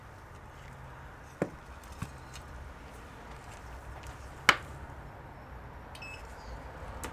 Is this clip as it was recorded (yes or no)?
yes